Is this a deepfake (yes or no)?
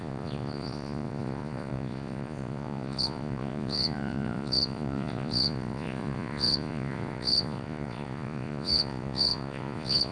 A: yes